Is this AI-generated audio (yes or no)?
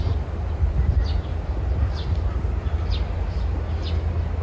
no